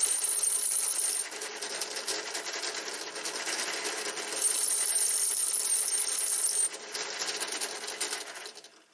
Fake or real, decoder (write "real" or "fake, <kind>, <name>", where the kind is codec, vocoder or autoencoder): real